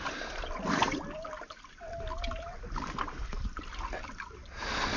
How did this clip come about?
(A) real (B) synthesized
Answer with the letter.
A